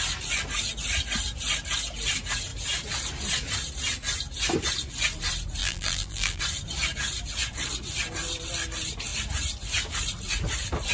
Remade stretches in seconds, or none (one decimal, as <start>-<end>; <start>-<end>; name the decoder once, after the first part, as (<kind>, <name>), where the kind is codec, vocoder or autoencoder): 5.6-6.4 (vocoder, BigVGAN v2)